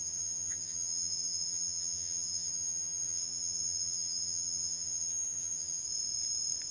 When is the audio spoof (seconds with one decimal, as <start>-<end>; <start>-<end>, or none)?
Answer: 0.0-5.8